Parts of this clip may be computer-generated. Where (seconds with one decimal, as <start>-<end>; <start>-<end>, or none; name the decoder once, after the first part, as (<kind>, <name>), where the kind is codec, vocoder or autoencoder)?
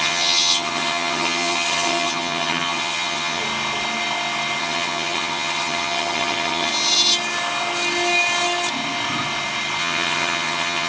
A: 0.0-3.4 (vocoder, HiFi-GAN); 4.6-6.7; 9.8-10.9